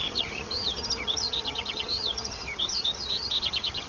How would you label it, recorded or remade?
remade